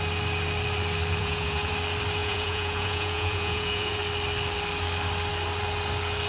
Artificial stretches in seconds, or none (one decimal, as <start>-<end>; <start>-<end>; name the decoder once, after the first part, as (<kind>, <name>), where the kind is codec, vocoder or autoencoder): 1.2-1.7 (vocoder, Vocos); 2.2-4.0